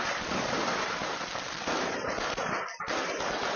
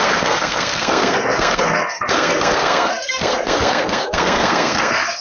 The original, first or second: first